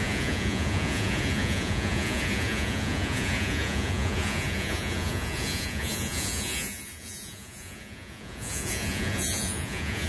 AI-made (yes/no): yes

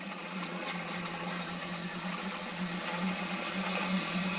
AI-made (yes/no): yes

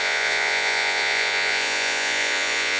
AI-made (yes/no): yes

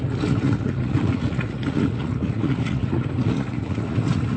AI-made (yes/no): yes